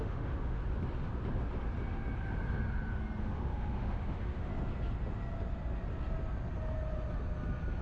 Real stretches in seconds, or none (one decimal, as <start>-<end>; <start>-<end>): 0.6-3.2; 4.5-7.8